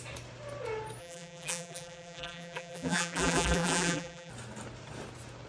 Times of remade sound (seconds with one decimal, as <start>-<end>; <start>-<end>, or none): 1.0-4.3